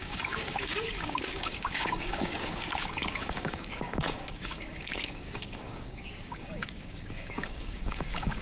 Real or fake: fake